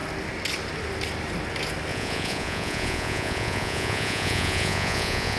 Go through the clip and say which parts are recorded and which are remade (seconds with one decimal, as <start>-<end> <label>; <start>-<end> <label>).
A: 0.0-1.9 recorded; 1.9-5.4 remade